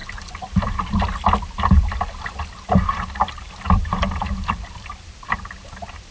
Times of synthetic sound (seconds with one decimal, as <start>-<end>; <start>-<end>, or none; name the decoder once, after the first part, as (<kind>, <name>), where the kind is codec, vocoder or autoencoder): 3.7-6.1 (vocoder, BigVGAN v2)